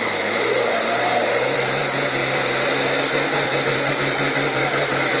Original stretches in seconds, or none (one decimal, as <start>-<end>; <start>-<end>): 0.7-1.3